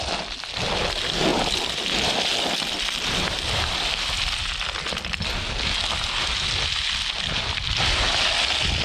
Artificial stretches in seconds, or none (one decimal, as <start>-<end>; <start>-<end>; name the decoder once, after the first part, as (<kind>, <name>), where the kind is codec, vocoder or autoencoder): none